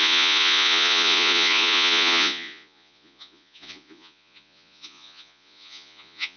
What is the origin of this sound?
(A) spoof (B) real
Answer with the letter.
A